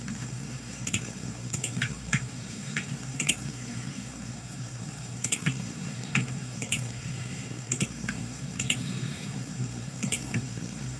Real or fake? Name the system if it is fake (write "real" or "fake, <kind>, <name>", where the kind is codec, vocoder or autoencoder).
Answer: fake, codec, SNAC